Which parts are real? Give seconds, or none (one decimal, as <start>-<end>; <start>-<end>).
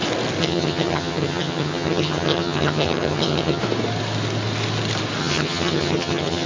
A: 0.0-0.4; 3.6-5.2